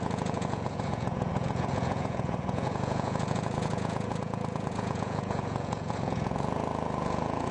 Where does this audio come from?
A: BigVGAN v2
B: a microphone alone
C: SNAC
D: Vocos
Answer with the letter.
D